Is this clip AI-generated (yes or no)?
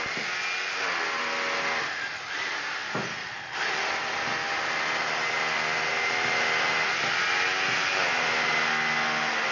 no